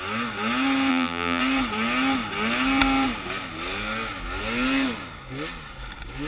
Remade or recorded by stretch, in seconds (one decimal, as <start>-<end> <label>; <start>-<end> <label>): 0.0-0.9 recorded; 0.9-1.4 remade; 1.4-6.3 recorded